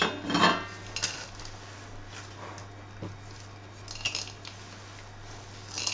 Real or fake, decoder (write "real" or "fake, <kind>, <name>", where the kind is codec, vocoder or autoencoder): real